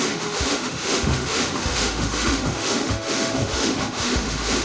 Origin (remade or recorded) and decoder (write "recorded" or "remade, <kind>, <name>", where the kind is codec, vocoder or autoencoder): remade, autoencoder, DAC-VAE